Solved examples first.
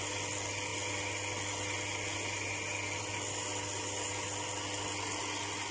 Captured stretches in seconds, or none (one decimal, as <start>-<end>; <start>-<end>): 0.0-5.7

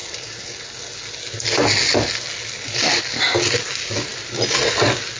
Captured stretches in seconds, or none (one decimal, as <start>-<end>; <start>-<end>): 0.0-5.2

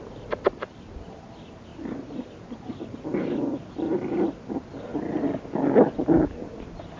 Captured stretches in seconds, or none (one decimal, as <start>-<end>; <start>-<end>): 0.0-7.0

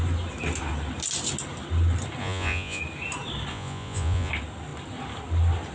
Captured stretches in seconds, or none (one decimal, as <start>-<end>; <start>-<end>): 0.0-2.2; 2.8-3.5; 4.3-5.7

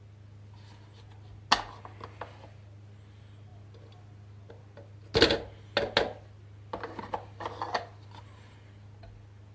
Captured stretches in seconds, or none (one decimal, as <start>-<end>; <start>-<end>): 0.0-9.5